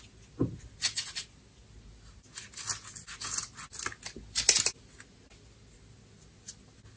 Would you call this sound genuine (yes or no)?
yes